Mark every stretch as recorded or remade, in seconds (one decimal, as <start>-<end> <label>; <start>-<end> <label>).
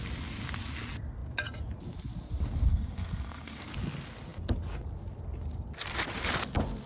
0.0-2.7 recorded; 2.7-3.6 remade; 3.6-6.9 recorded